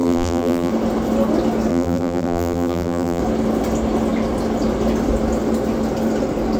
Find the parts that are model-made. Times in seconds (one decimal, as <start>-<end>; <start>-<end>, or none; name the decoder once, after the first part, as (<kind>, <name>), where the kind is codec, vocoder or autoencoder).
0.0-0.7 (vocoder, BigVGAN v2); 1.7-3.2

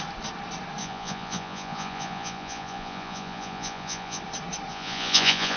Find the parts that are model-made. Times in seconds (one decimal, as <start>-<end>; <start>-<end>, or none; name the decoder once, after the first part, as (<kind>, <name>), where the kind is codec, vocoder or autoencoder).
0.8-4.2 (vocoder, Vocos); 4.7-5.6

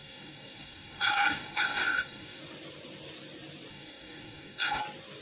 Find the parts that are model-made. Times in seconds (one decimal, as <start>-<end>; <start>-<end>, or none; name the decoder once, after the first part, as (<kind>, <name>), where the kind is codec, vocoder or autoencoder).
0.0-2.4 (codec, DAC); 3.7-4.8

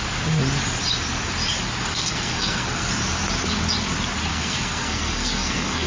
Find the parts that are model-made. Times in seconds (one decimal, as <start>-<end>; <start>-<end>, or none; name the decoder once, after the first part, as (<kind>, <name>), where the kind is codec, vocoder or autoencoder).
1.9-2.9 (codec, SNAC); 4.3-5.9

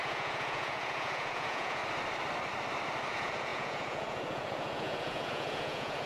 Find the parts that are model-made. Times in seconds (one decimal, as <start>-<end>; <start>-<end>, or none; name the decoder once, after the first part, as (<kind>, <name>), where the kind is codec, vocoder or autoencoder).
0.0-1.8 (vocoder, Vocos); 3.1-6.1

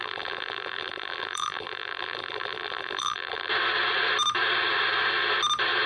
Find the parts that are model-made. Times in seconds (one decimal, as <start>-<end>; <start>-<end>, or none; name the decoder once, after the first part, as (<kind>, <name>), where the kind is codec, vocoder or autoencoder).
0.0-3.5 (vocoder, BigVGAN v2)